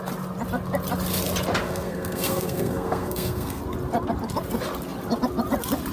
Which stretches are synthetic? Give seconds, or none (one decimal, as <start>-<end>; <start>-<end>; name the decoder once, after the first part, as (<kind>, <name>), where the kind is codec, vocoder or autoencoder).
1.6-3.6 (codec, SNAC)